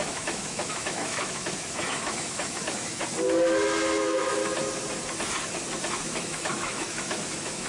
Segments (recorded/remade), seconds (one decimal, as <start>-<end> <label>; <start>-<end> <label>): 0.0-3.0 remade; 3.0-4.0 recorded; 4.0-4.4 remade; 4.4-5.9 recorded; 5.9-7.7 remade